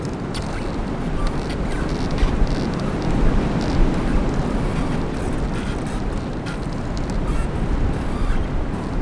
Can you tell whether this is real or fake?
real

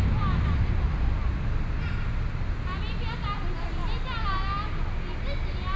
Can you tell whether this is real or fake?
real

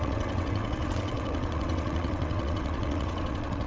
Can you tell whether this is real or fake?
fake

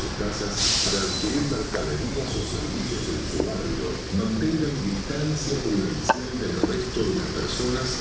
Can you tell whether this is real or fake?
real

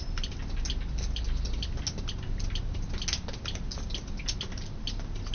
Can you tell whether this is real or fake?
real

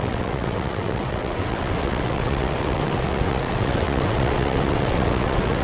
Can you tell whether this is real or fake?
fake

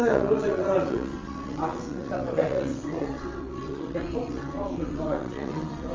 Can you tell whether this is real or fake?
fake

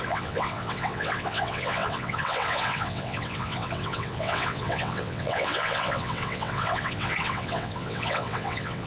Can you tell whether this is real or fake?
fake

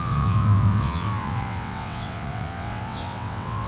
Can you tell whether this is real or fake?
fake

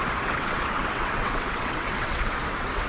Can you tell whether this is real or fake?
fake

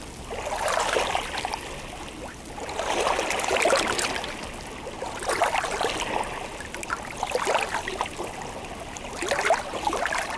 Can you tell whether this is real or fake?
real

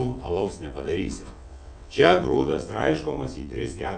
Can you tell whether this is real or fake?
fake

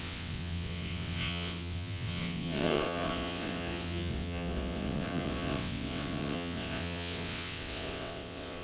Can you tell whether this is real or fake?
fake